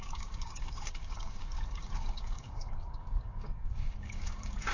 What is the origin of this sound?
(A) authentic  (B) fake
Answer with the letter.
B